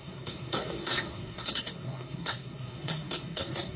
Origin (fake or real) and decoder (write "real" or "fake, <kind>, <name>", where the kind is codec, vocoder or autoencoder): fake, codec, SNAC